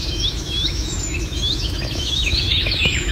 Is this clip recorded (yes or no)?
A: no